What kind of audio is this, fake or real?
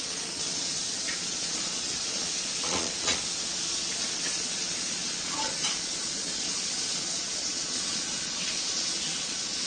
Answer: fake